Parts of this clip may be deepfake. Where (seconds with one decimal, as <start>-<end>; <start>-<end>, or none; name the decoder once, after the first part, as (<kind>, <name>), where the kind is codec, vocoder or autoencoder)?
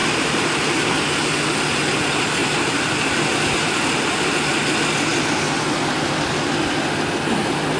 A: 0.0-0.6 (vocoder, BigVGAN v2); 2.4-3.7